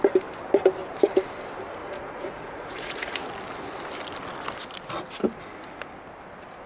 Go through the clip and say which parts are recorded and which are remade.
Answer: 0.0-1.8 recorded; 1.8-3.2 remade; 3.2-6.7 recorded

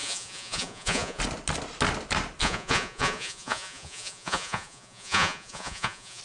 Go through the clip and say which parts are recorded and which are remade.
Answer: 0.0-1.2 remade; 1.2-2.4 recorded; 2.4-6.2 remade